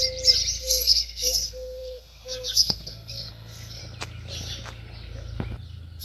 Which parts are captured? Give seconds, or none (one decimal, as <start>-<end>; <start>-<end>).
0.0-0.6; 3.8-6.0